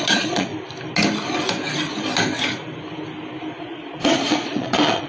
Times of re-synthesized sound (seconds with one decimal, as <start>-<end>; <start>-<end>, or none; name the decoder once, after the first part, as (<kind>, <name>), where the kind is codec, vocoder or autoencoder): 0.0-0.5 (vocoder, Vocos); 3.6-5.1